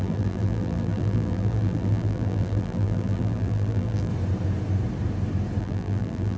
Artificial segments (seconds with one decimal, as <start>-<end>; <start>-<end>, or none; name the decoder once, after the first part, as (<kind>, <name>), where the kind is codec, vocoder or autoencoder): 0.0-4.1 (vocoder, BigVGAN v2); 5.6-6.4